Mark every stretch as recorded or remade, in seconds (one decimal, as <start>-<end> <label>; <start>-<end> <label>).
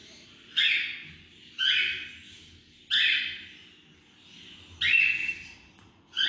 0.0-0.6 remade; 0.6-5.2 recorded; 5.2-6.3 remade